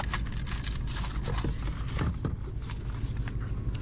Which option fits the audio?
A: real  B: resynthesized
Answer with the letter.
A